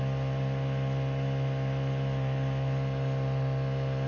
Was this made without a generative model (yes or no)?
yes